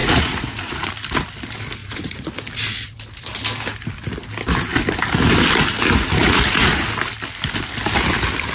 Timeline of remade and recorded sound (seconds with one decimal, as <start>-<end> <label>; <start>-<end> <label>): 0.0-0.9 remade; 0.9-1.8 recorded; 1.8-2.3 remade; 2.3-6.2 recorded; 6.2-6.7 remade; 6.7-8.5 recorded